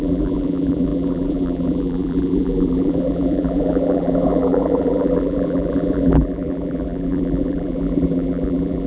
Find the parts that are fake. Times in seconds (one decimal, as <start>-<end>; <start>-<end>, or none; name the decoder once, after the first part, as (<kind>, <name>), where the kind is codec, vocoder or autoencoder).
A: 0.0-8.9 (vocoder, BigVGAN v2)